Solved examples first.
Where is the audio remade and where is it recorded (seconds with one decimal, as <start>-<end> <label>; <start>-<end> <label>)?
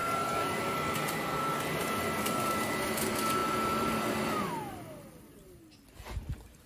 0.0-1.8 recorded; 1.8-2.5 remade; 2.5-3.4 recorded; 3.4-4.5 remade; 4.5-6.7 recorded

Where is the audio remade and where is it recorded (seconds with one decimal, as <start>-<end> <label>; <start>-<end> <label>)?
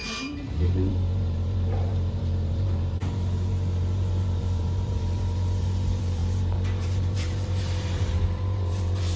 0.0-0.9 recorded; 0.9-9.2 remade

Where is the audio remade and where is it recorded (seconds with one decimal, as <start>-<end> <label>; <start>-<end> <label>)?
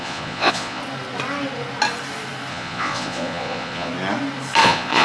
0.0-0.8 remade; 0.8-2.5 recorded; 2.5-3.9 remade; 3.9-4.6 recorded; 4.6-5.0 remade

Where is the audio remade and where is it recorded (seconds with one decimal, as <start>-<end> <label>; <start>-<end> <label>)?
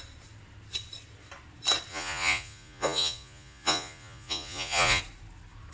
0.0-1.9 recorded; 1.9-5.0 remade; 5.0-5.7 recorded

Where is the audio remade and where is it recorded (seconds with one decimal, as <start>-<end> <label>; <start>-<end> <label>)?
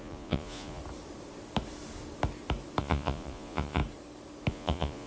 0.0-0.8 remade; 0.8-2.8 recorded; 2.8-3.8 remade; 3.8-4.5 recorded; 4.5-5.1 remade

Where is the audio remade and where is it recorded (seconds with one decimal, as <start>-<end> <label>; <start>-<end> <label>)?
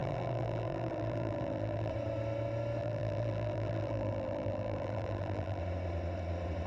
0.0-1.9 remade; 1.9-2.8 recorded; 2.8-5.6 remade; 5.6-6.7 recorded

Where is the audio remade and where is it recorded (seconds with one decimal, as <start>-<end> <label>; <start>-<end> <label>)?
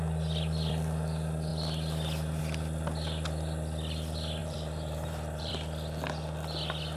0.0-4.4 recorded; 4.4-5.5 remade; 5.5-7.0 recorded